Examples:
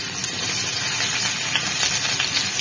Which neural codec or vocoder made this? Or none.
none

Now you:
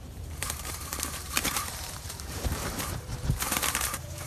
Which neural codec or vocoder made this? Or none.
vocoder, BigVGAN v2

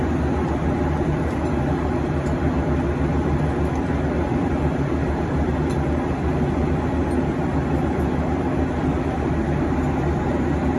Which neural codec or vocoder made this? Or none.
vocoder, BigVGAN v2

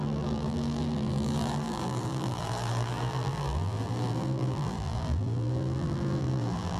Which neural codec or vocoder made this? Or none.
vocoder, BigVGAN v2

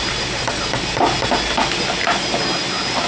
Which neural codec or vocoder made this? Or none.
none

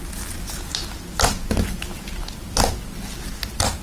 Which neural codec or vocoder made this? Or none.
none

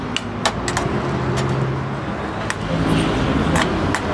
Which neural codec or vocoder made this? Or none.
none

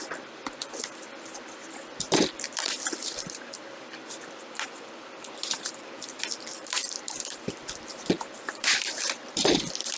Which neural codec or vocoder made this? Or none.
vocoder, BigVGAN v2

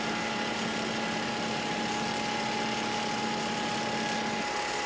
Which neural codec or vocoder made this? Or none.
none